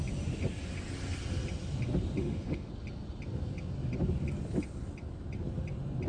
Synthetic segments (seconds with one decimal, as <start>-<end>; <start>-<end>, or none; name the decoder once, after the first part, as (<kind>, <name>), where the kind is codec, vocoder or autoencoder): 2.2-2.7 (autoencoder, DAC-VAE)